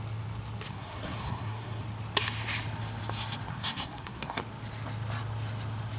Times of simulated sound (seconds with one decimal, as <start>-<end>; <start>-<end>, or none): 0.7-1.8; 3.5-4.4